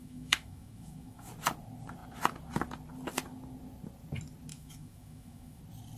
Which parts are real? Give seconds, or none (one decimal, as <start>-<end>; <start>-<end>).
1.3-4.5; 5.6-6.0